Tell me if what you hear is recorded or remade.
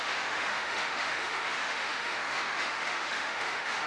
remade